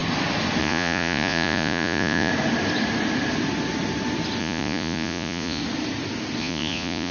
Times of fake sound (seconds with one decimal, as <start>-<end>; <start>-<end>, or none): 0.6-2.3; 4.4-5.6; 6.4-7.1